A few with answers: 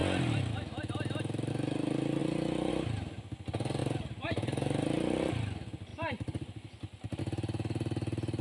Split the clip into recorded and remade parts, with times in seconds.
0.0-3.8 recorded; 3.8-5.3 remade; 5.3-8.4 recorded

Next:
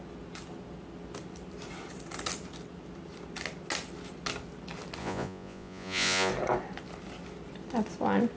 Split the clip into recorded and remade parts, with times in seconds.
0.0-5.0 recorded; 5.0-6.3 remade; 6.3-8.4 recorded

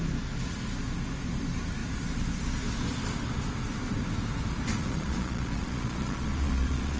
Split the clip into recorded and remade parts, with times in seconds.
0.0-4.7 recorded; 4.7-7.0 remade

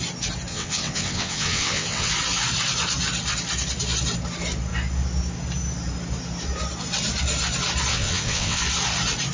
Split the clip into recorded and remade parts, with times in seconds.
0.0-0.5 recorded; 0.5-2.1 remade; 2.1-7.9 recorded; 7.9-8.6 remade; 8.6-9.3 recorded

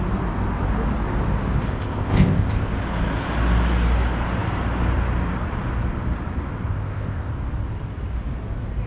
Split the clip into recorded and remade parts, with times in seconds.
0.0-1.7 recorded; 1.7-2.7 remade; 2.7-6.7 recorded; 6.7-7.3 remade; 7.3-8.9 recorded

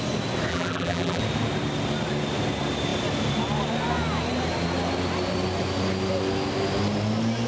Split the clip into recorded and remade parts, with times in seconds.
0.0-0.5 recorded; 0.5-1.2 remade; 1.2-7.5 recorded